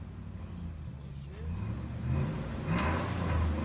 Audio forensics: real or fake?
real